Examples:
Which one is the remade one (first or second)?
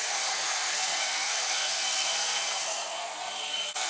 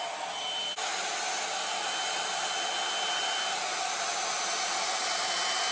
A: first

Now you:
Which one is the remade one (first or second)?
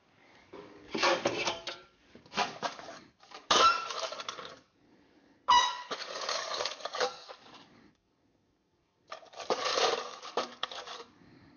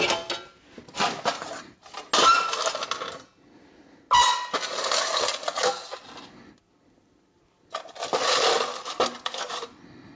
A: first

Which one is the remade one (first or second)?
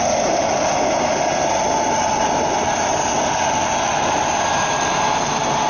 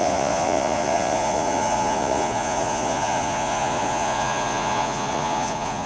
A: second